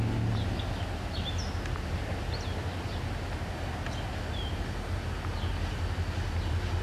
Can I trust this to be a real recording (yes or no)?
yes